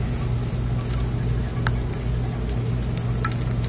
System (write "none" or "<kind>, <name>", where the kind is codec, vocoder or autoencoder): none